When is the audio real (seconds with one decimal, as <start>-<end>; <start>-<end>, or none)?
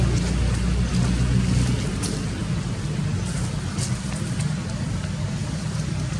0.0-6.2